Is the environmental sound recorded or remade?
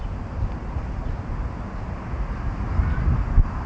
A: recorded